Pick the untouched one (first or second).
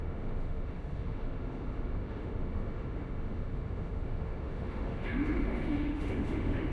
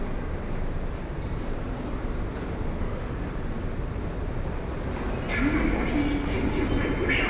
second